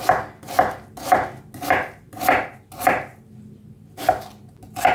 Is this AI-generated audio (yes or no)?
no